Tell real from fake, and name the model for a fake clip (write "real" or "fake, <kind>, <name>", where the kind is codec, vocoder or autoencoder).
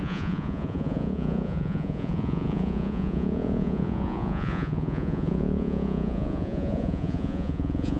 fake, vocoder, Vocos